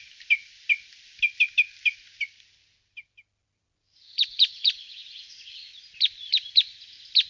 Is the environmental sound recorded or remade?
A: recorded